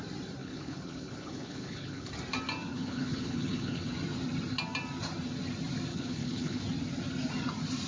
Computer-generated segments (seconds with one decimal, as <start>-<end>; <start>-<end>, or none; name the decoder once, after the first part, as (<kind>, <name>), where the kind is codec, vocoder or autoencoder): 0.4-2.1 (codec, HILCodec); 2.7-3.9; 5.9-6.6